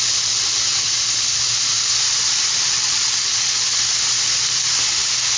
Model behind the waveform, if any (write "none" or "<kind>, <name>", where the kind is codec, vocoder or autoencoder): none